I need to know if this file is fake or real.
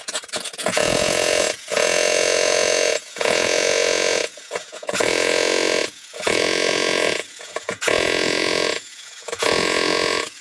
fake